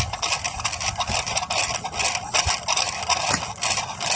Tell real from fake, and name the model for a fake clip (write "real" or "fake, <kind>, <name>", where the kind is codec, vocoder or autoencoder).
real